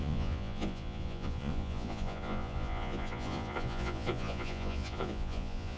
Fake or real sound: fake